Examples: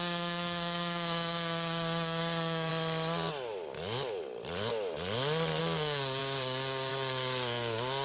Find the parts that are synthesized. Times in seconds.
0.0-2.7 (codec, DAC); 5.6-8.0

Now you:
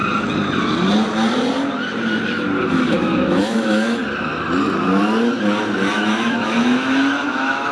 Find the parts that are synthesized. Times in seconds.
2.7-4.0 (autoencoder, DAC-VAE); 5.9-7.7

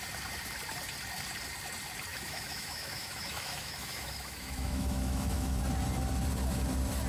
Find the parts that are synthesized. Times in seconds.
2.1-5.6 (autoencoder, DAC-VAE)

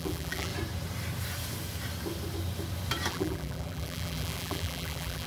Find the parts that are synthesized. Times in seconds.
0.0-0.5 (vocoder, BigVGAN v2); 3.1-5.3

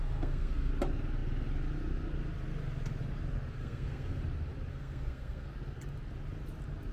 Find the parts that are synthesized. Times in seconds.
0.0-0.7 (codec, SNAC); 3.6-4.2; 4.7-5.5

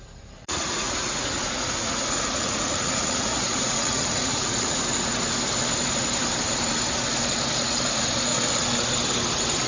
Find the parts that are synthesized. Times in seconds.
0.4-4.8 (vocoder, Vocos)